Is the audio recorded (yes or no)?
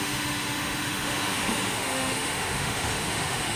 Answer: no